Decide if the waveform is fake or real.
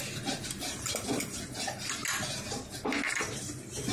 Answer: real